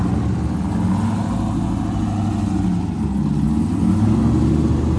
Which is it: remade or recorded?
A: recorded